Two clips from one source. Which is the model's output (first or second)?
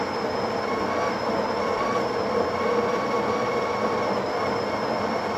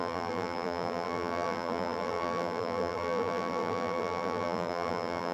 second